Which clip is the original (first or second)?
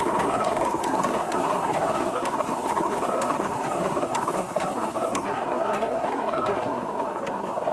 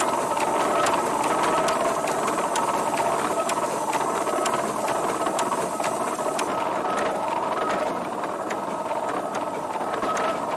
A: second